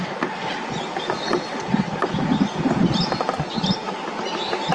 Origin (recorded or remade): recorded